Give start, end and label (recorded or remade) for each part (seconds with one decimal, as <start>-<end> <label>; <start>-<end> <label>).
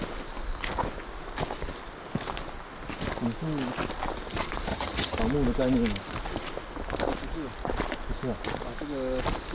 0.0-4.7 recorded; 4.7-5.2 remade; 5.2-9.5 recorded